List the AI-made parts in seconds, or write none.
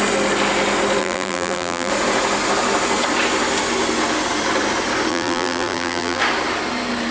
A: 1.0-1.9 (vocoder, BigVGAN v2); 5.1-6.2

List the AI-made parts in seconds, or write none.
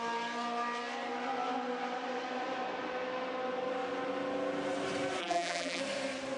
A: 5.2-5.8 (vocoder, BigVGAN v2)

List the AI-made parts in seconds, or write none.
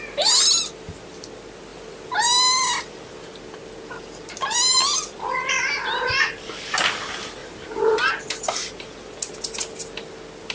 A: 7.4-8.1 (vocoder, BigVGAN v2)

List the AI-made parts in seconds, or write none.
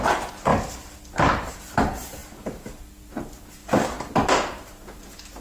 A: 0.5-1.6 (vocoder, BigVGAN v2); 3.6-4.1